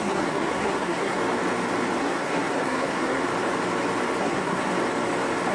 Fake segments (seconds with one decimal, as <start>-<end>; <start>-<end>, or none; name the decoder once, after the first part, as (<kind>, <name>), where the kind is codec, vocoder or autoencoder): 0.0-1.2 (codec, SNAC); 2.0-3.2; 4.2-4.7